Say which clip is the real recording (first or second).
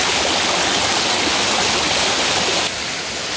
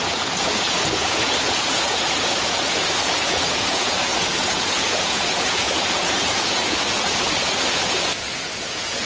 first